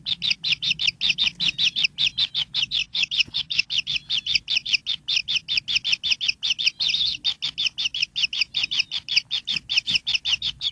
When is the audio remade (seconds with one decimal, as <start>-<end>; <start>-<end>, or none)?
2.8-3.7